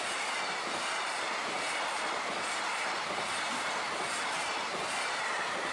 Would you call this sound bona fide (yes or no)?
yes